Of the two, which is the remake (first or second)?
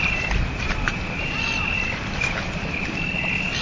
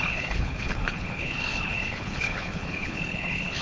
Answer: second